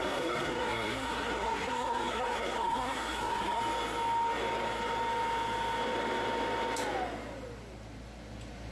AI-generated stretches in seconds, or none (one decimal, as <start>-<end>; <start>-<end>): 0.0-3.6